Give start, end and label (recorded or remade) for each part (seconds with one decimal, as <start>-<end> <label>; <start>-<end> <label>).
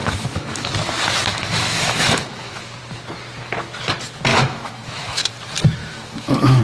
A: 0.0-0.7 remade; 0.7-1.3 recorded; 1.3-2.8 remade; 2.8-4.3 recorded; 4.3-5.3 remade; 5.3-5.8 recorded; 5.8-6.6 remade